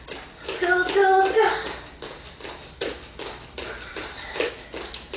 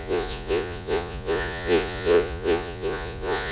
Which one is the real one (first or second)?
first